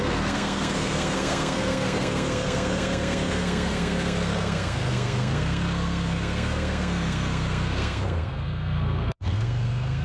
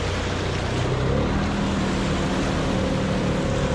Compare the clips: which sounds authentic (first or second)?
second